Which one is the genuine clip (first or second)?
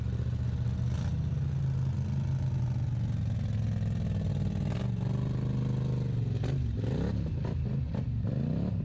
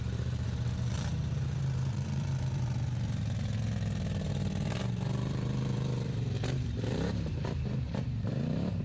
first